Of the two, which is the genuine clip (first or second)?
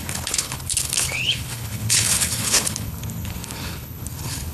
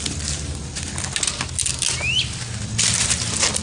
second